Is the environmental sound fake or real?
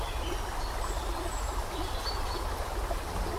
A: real